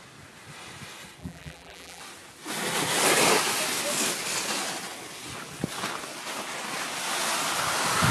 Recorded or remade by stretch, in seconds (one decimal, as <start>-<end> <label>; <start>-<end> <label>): 0.0-1.2 recorded; 1.2-2.0 remade; 2.0-8.1 recorded